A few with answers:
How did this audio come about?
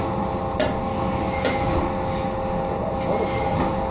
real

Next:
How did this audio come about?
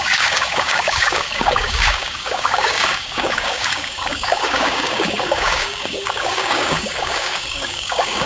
fake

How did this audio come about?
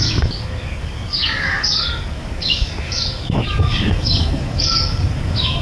fake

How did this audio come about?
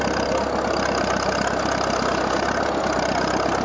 real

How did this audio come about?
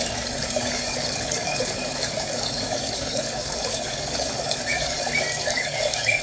fake